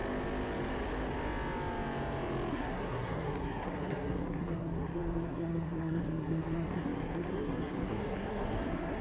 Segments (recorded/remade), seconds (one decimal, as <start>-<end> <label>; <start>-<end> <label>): 0.0-2.5 recorded; 2.5-9.0 remade